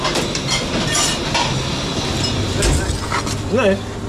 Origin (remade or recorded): recorded